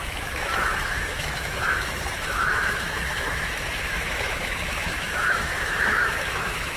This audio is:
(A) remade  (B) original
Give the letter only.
A